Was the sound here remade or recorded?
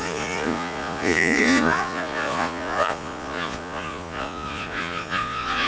remade